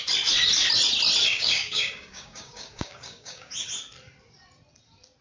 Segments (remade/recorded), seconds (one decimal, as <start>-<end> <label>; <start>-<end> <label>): 0.0-1.3 recorded; 1.3-3.7 remade; 3.7-5.2 recorded